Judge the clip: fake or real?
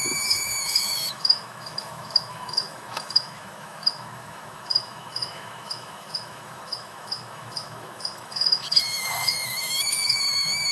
fake